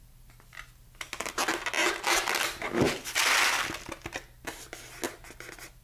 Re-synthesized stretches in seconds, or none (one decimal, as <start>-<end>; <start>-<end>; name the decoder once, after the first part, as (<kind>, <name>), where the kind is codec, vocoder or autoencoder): none